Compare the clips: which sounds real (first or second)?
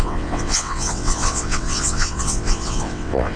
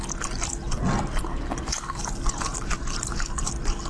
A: second